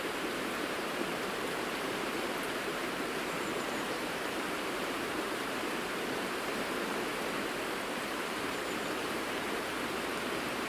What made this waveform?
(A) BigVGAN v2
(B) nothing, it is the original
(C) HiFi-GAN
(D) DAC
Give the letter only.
A